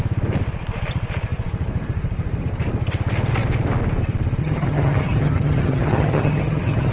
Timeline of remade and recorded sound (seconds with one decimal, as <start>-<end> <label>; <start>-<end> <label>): 0.0-4.4 recorded; 4.4-6.9 remade